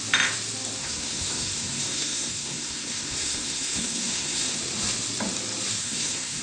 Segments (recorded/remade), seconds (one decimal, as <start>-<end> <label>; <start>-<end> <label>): 0.0-0.8 recorded; 0.8-4.6 remade; 4.6-5.8 recorded; 5.8-6.4 remade